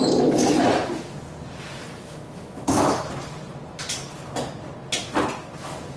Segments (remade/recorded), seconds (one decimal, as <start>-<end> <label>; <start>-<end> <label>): 0.0-1.8 recorded; 1.8-3.1 remade; 3.1-6.0 recorded